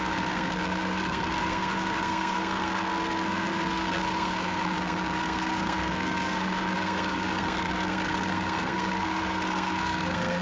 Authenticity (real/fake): fake